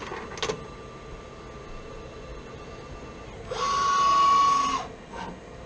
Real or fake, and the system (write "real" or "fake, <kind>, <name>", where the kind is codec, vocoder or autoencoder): real